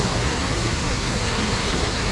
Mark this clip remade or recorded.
remade